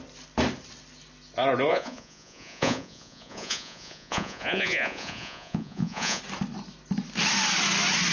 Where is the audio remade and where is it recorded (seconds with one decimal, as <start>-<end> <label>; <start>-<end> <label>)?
0.0-1.7 recorded; 1.7-6.2 remade; 6.2-8.1 recorded